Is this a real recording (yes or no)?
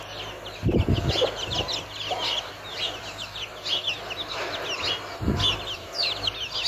yes